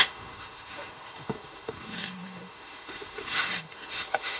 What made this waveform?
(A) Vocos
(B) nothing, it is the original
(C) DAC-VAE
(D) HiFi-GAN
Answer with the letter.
C